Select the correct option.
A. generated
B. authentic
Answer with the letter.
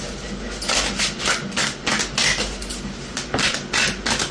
B